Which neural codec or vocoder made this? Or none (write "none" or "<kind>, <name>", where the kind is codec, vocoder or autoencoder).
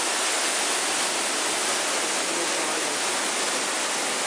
none